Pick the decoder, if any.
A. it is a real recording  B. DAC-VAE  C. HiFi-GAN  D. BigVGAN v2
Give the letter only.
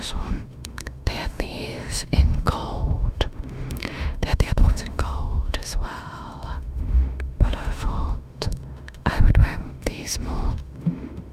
B